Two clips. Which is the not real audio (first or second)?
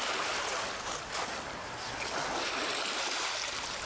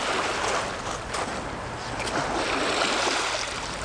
first